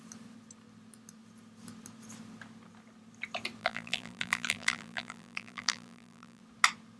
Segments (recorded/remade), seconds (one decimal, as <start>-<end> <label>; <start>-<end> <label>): 0.0-3.6 recorded; 3.6-6.4 remade; 6.4-7.0 recorded